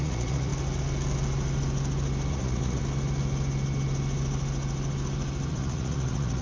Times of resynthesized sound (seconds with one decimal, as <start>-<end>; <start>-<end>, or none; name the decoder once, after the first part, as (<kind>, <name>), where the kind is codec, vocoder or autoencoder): 0.0-0.5 (vocoder, Vocos); 2.3-2.8; 5.5-6.4